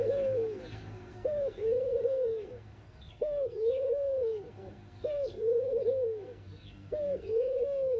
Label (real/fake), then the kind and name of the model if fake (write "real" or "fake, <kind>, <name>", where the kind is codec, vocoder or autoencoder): fake, codec, SNAC